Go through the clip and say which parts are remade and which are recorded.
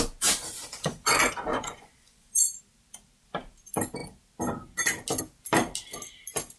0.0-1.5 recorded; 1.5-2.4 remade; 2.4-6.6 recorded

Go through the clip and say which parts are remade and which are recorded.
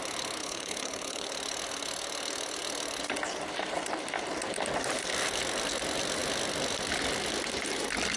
0.0-0.4 recorded; 0.4-1.3 remade; 1.3-8.2 recorded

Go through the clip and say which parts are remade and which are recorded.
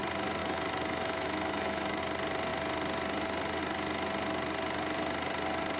0.0-0.4 recorded; 0.4-2.0 remade; 2.0-5.8 recorded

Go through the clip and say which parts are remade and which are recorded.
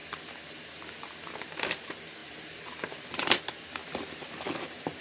0.0-5.0 remade